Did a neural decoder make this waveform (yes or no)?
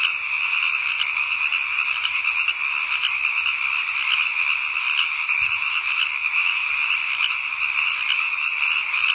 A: no